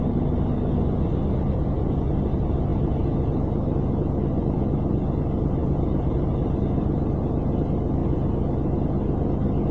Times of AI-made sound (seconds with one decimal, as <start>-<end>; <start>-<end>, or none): none